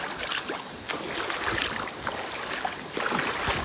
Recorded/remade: recorded